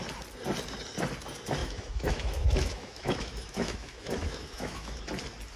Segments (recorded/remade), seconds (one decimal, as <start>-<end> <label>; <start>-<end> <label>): 0.0-1.6 recorded; 1.6-5.0 remade; 5.0-5.6 recorded